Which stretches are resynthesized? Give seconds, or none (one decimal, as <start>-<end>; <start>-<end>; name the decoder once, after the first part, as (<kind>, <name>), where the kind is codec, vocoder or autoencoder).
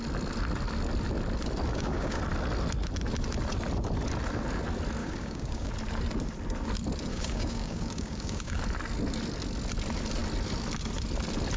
1.7-2.2 (codec, DAC); 5.0-5.7; 7.1-8.6